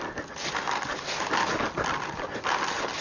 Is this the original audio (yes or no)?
yes